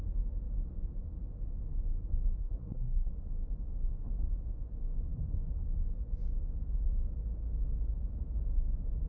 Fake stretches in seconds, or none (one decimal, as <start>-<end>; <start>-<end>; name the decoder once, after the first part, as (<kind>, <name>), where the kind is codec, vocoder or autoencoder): 2.4-3.1 (codec, SNAC)